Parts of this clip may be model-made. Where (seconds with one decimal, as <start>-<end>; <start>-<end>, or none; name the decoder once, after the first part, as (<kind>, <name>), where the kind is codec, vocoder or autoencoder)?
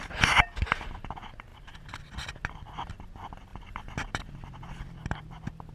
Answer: 1.5-2.3 (vocoder, BigVGAN v2); 3.5-5.3